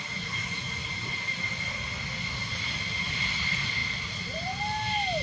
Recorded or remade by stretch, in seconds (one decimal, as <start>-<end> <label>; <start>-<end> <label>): 0.0-0.8 recorded; 0.8-1.7 remade; 1.7-3.8 recorded; 3.8-4.6 remade; 4.6-5.2 recorded